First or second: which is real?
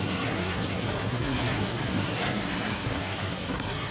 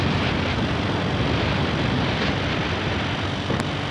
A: second